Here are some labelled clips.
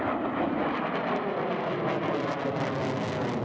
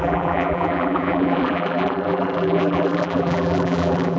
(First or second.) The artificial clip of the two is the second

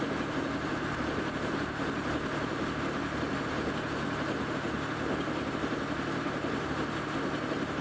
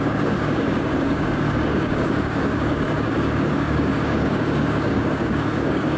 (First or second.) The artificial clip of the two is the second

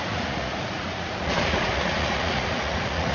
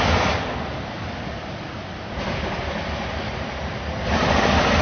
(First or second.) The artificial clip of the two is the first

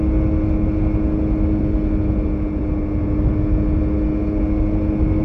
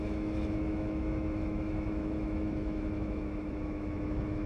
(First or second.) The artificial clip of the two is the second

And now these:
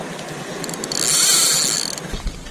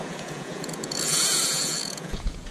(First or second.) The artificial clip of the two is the second